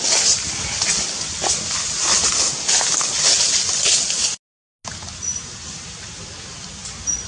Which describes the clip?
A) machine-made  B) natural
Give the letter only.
B